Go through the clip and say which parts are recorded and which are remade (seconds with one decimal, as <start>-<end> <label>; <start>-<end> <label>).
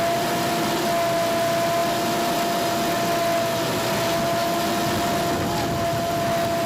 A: 0.0-6.7 recorded